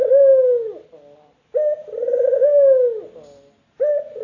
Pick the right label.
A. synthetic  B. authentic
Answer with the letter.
B